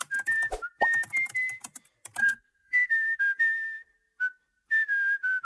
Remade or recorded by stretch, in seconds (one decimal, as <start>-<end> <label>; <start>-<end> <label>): 0.0-2.2 recorded; 2.2-3.2 remade; 3.2-5.4 recorded